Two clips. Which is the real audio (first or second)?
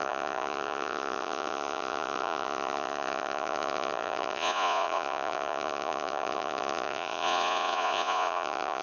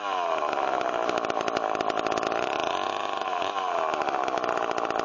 second